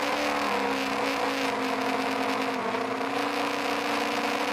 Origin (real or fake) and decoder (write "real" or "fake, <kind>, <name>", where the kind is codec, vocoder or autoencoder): real